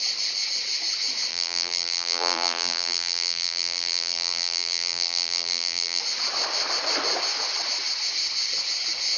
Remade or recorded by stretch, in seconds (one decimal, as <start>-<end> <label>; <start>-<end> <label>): 0.0-1.3 recorded; 1.3-6.0 remade; 6.0-9.2 recorded